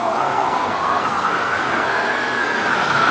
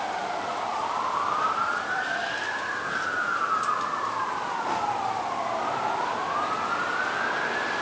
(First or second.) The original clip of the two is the second